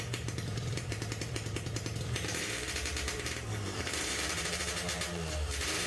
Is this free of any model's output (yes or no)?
no